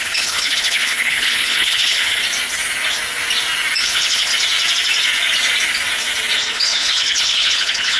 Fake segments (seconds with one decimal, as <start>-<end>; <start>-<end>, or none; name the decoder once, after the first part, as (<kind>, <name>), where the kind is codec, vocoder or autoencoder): 0.0-2.2 (codec, HILCodec); 3.8-4.3; 6.5-8.0